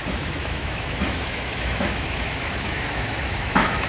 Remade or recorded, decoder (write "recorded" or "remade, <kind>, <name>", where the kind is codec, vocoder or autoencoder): remade, autoencoder, DAC-VAE